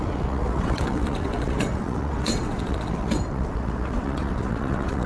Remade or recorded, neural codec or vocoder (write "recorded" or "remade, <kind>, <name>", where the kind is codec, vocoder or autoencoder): remade, vocoder, WaveNeXt